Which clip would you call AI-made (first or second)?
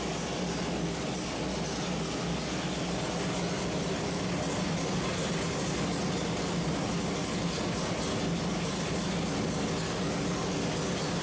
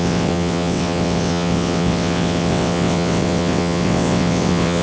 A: second